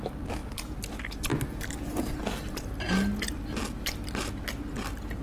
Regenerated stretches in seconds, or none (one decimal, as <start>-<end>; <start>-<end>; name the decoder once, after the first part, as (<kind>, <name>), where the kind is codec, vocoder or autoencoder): none